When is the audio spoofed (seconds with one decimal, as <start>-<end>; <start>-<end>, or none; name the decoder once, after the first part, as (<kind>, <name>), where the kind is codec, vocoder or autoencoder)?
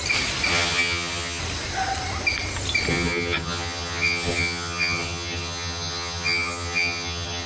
0.5-1.4 (vocoder, HiFi-GAN); 2.9-7.5